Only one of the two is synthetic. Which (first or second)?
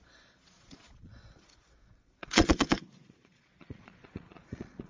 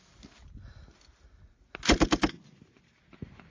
first